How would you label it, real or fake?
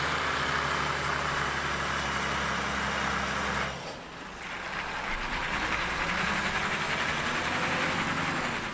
real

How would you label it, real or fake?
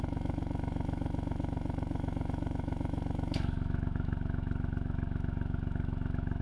fake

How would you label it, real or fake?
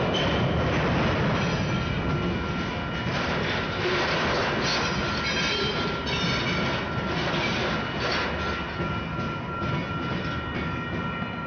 real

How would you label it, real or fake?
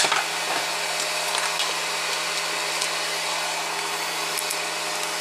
real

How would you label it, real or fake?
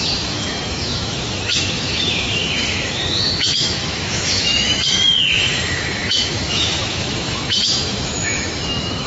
fake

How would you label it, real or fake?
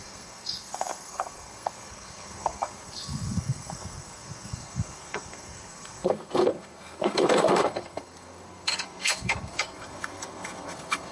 fake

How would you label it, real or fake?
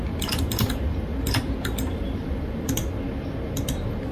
real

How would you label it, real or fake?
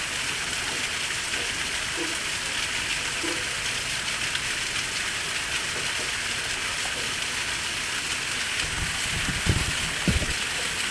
real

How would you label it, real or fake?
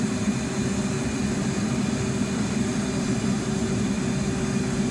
real